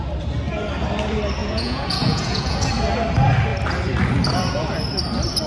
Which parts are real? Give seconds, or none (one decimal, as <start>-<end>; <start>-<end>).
0.0-1.4; 2.7-5.5